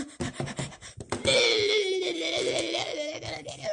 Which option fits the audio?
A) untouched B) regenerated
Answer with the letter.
A